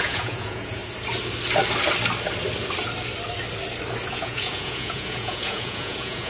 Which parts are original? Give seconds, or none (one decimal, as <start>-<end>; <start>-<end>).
0.8-4.1